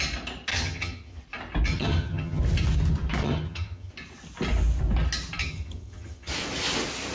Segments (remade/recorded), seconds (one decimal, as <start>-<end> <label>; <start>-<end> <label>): 0.0-0.5 recorded; 0.5-1.2 remade; 1.2-1.7 recorded; 1.7-2.4 remade; 2.4-3.2 recorded; 3.2-3.9 remade; 3.9-5.4 recorded; 5.4-6.3 remade; 6.3-7.1 recorded